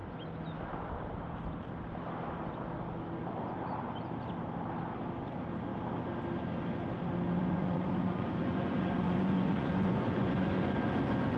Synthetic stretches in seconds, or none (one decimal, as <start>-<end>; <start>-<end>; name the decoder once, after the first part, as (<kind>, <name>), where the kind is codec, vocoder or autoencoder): 7.4-11.4 (vocoder, Vocos)